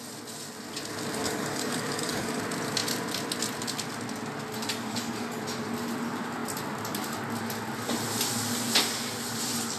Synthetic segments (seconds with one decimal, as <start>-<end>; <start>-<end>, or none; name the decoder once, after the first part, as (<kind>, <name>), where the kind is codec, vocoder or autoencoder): 1.2-2.4 (codec, DAC); 4.7-5.4